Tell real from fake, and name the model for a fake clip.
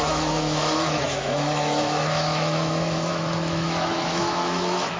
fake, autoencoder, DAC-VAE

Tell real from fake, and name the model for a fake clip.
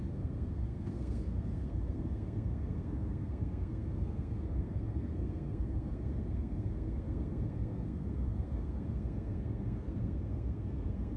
fake, codec, SNAC